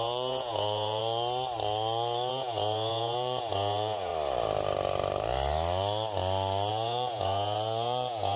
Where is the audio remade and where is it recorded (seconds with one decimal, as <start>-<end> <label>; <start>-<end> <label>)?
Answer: 0.0-1.0 remade; 1.0-2.3 recorded; 2.3-4.1 remade; 4.1-6.7 recorded; 6.7-8.4 remade